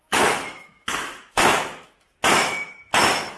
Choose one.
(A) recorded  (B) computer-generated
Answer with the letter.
B